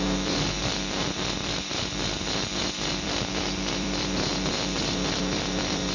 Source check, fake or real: fake